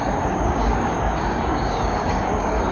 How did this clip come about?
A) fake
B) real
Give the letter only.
A